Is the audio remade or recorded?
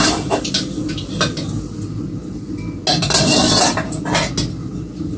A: recorded